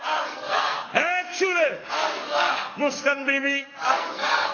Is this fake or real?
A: fake